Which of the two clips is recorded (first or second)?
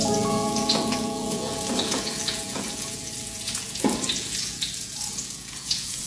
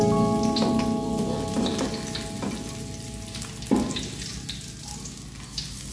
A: second